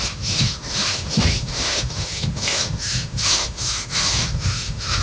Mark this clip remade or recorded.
remade